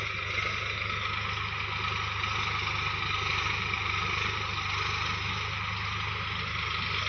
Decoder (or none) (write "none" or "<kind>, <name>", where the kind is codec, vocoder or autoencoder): none